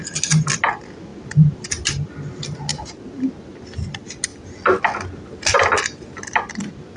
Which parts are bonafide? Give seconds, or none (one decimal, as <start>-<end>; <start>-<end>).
0.0-1.1; 2.1-2.7; 3.3-7.0